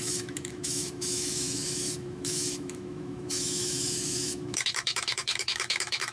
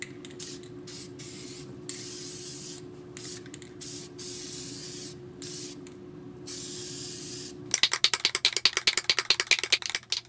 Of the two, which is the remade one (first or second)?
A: first